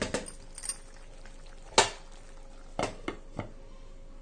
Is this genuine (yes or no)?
yes